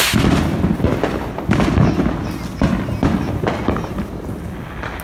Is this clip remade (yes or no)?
no